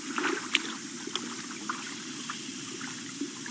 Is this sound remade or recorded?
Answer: recorded